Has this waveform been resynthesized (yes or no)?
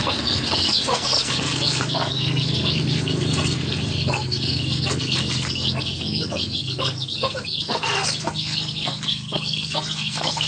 yes